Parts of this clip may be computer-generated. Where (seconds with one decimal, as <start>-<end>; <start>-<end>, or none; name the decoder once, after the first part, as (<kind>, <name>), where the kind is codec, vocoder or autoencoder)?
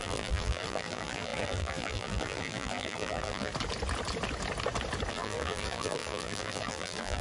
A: 0.0-3.5 (vocoder, BigVGAN v2); 5.1-7.2